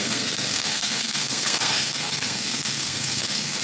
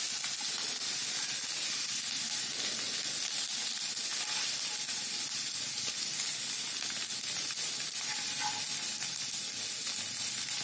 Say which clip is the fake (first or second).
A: first